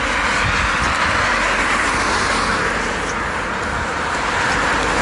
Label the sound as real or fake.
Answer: real